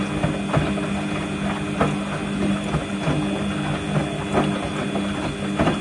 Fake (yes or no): no